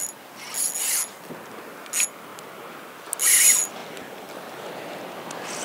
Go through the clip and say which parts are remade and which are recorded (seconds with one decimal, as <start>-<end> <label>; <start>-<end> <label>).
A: 0.0-5.6 recorded